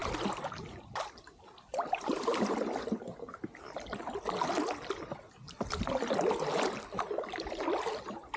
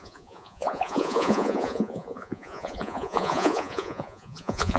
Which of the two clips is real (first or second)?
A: first